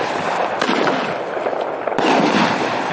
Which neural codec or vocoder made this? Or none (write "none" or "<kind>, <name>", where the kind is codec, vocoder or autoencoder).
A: none